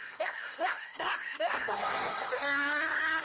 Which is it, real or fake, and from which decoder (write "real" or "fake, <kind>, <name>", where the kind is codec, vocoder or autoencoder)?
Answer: fake, codec, SNAC